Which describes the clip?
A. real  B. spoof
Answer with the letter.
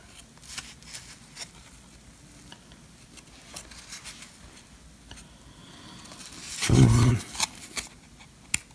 A